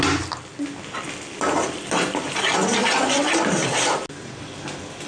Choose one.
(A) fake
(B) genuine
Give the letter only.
B